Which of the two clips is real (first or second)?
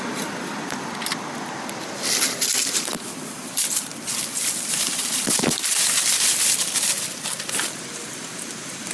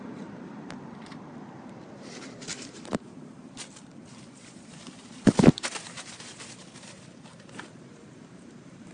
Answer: first